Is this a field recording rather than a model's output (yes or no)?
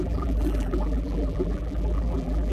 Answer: no